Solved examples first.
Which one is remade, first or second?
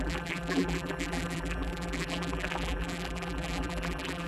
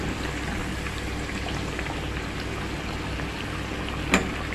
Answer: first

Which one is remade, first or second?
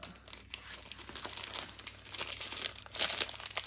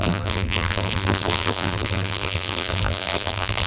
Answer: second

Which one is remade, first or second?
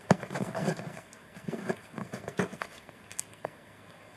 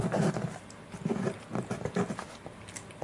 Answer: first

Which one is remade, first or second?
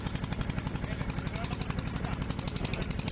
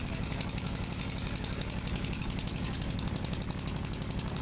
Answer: second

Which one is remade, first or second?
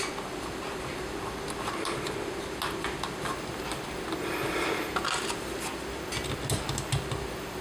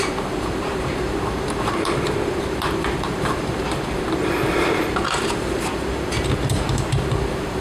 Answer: second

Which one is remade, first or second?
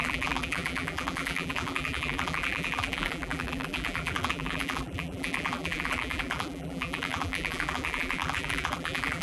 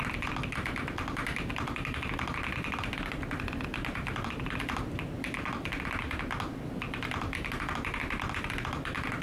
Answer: first